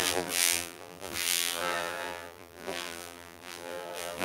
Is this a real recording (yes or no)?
no